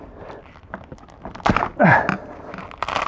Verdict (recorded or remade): recorded